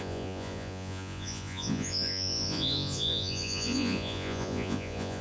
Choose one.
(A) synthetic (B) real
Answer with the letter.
A